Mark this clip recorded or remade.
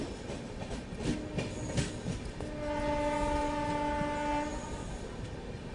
recorded